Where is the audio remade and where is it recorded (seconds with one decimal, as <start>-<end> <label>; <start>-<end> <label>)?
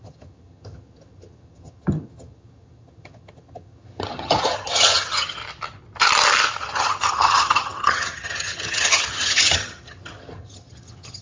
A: 0.0-5.4 remade; 5.4-6.6 recorded; 6.6-11.2 remade